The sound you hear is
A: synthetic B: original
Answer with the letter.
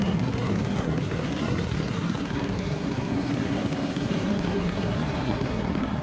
A